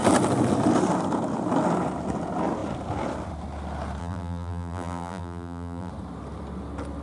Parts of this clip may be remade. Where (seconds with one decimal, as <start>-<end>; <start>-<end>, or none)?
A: 4.0-5.9